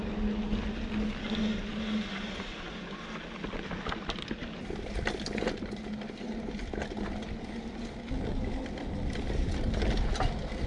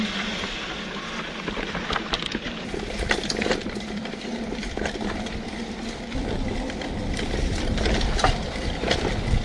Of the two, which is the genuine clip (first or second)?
first